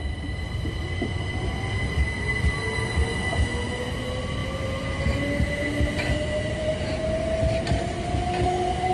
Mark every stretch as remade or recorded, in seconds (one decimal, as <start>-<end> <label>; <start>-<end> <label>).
0.0-8.9 recorded